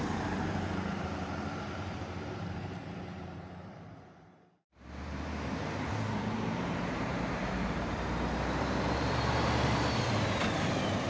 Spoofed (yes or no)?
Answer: yes